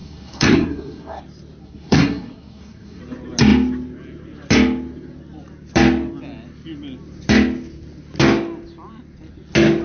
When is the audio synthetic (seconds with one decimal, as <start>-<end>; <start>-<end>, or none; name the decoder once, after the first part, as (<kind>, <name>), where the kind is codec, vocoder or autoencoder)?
0.0-1.2 (codec, SNAC); 1.6-3.0